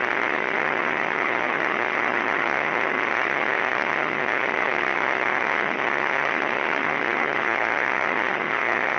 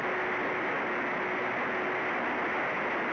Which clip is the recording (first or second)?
second